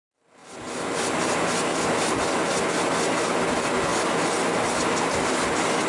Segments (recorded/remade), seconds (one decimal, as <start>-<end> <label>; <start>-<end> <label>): 0.0-5.9 recorded